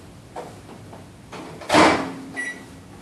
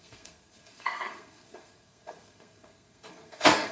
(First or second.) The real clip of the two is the first